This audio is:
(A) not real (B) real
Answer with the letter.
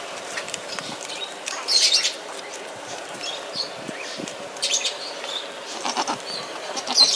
A